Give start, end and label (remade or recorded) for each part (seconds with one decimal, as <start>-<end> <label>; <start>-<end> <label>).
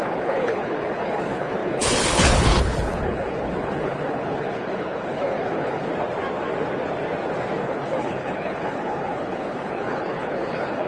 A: 0.0-5.9 remade; 5.9-7.6 recorded; 7.6-10.9 remade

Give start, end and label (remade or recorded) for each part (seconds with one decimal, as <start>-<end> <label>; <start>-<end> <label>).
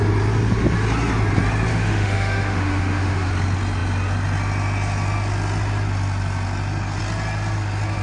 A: 0.0-1.7 recorded; 1.7-3.3 remade; 3.3-8.0 recorded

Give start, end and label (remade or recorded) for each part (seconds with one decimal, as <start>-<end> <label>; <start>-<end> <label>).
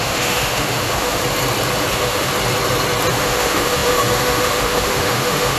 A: 0.0-1.2 remade; 1.2-1.9 recorded; 1.9-2.3 remade; 2.3-3.1 recorded; 3.1-5.6 remade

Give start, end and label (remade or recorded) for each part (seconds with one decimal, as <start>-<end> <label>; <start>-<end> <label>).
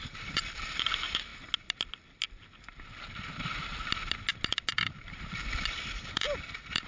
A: 0.0-1.3 remade; 1.3-4.7 recorded; 4.7-6.9 remade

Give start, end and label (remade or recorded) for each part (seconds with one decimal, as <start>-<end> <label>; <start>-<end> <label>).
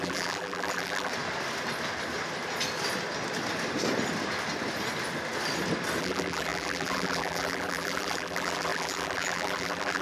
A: 0.0-1.1 remade; 1.1-6.0 recorded; 6.0-10.0 remade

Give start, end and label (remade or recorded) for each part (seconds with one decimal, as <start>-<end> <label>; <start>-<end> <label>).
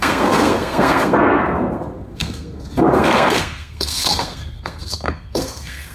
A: 0.0-5.9 remade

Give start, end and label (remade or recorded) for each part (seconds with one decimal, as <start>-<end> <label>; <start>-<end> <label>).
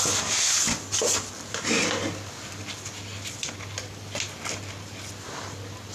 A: 0.0-5.9 recorded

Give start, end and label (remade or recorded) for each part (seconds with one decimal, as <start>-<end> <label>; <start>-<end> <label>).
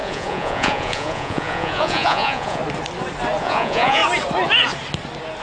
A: 0.0-2.6 remade; 2.6-3.4 recorded; 3.4-4.0 remade; 4.0-5.4 recorded